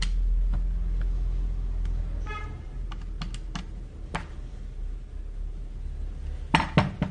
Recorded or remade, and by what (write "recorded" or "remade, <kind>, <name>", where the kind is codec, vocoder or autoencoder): recorded